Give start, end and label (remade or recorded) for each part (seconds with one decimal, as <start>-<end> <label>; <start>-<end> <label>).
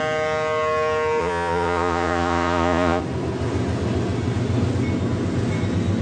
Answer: 0.0-1.2 recorded; 1.2-3.0 remade; 3.0-6.0 recorded